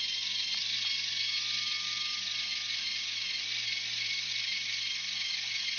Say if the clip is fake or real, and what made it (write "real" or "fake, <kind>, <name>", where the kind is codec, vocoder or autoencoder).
real